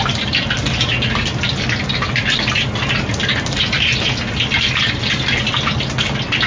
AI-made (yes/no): no